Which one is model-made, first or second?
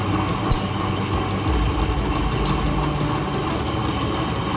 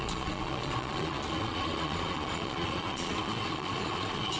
second